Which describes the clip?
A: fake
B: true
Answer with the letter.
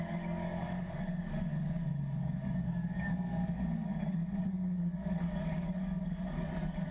A